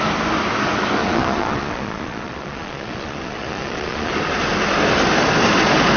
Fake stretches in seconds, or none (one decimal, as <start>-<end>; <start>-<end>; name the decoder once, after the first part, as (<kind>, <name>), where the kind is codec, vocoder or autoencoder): 1.0-4.1 (vocoder, Vocos)